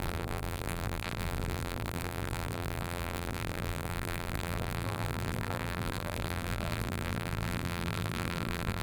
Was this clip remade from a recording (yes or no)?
yes